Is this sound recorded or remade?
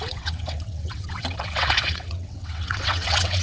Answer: remade